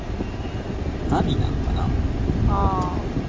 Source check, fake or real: real